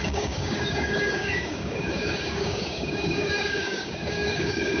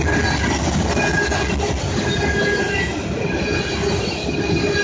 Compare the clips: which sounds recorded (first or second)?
second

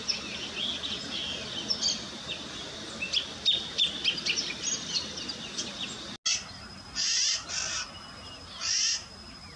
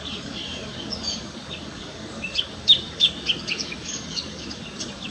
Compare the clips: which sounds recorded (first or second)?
first